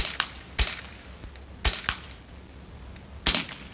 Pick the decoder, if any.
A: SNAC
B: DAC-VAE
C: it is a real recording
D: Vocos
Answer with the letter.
C